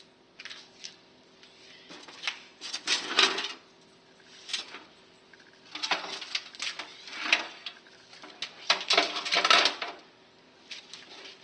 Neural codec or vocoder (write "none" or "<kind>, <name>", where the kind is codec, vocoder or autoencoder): none